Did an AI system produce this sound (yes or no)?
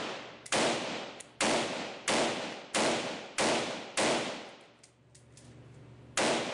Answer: no